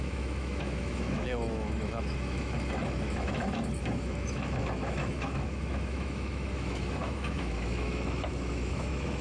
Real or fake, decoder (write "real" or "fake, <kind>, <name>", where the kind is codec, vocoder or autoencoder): fake, autoencoder, DAC-VAE